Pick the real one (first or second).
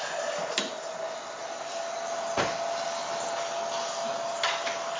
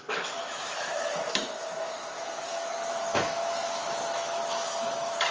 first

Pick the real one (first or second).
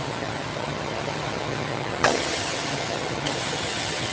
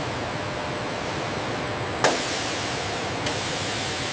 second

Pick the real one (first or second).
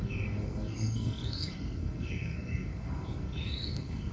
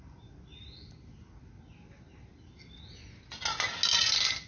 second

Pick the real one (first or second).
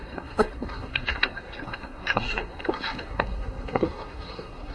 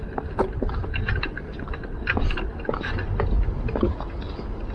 second